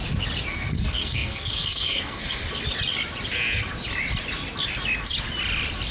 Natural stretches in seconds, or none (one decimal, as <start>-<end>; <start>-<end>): 0.0-0.5; 2.4-5.9